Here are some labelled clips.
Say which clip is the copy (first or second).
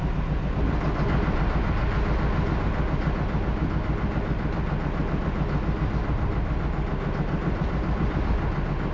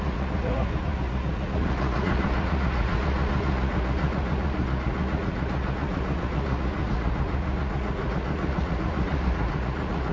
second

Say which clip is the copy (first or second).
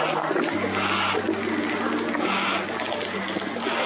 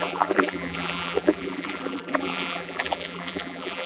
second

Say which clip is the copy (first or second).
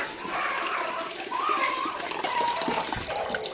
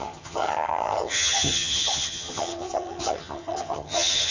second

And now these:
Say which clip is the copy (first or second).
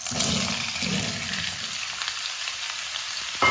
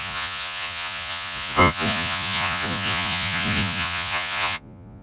second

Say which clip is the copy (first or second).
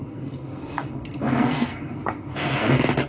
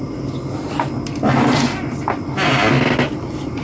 first